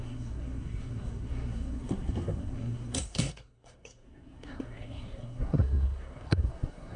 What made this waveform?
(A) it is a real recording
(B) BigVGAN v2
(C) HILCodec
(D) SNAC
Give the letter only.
D